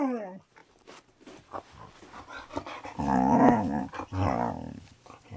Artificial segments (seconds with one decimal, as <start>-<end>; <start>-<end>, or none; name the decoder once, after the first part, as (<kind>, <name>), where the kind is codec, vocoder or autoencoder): none